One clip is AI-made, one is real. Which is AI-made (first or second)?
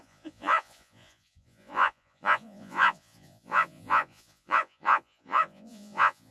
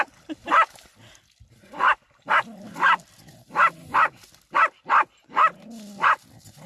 first